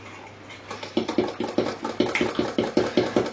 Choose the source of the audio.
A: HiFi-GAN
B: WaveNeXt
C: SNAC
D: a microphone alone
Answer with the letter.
D